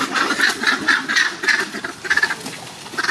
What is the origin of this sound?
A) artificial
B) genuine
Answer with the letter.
B